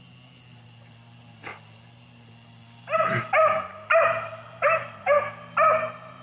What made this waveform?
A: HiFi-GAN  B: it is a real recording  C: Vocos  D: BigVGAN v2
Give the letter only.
B